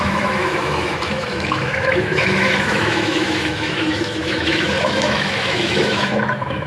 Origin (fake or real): fake